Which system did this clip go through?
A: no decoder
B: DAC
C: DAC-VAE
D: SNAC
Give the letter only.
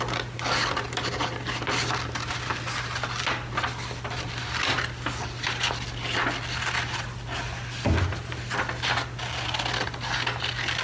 A